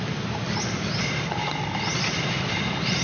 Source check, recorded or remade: recorded